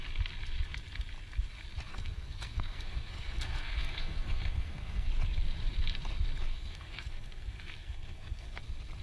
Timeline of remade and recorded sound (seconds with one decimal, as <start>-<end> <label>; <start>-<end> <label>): 0.0-1.9 recorded; 1.9-5.1 remade; 5.1-6.5 recorded; 6.5-8.6 remade; 8.6-9.0 recorded